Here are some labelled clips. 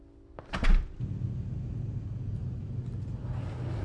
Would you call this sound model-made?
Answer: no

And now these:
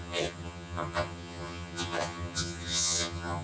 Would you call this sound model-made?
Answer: yes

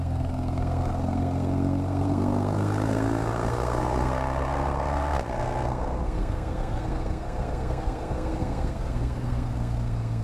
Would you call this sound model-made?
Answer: yes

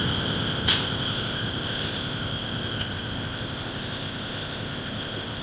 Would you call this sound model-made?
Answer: yes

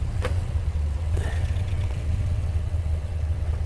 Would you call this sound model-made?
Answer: yes